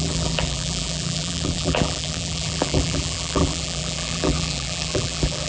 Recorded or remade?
remade